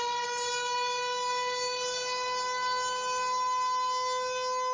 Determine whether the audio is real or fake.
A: real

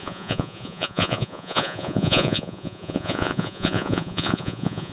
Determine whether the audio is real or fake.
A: fake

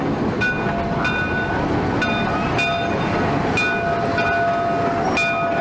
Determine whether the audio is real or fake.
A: real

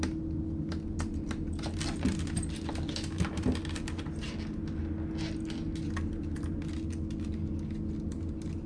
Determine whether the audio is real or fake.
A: real